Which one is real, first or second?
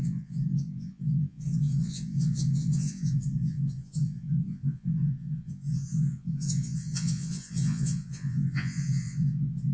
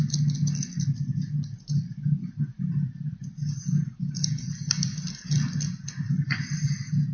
second